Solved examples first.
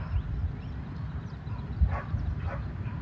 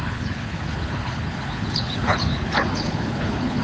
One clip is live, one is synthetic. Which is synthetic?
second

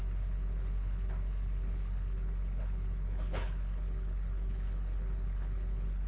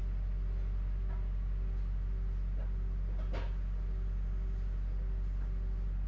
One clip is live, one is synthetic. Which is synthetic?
first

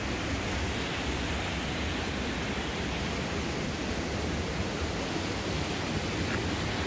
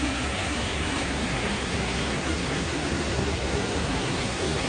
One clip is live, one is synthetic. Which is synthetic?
second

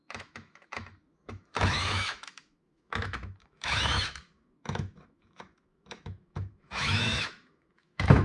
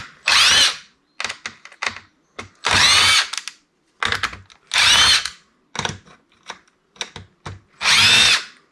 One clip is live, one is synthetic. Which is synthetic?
first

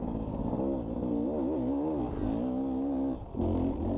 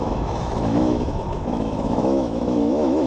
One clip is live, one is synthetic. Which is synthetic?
second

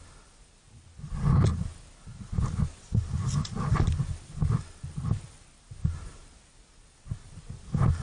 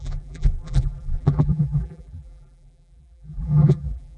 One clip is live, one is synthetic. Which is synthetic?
second